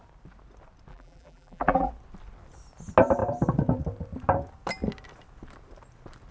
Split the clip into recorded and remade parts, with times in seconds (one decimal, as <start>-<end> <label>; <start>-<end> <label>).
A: 0.0-0.9 recorded; 0.9-1.9 remade; 1.9-6.3 recorded